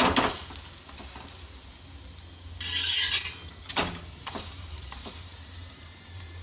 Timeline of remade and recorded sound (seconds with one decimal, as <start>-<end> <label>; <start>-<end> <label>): 0.0-3.8 recorded; 3.8-6.4 remade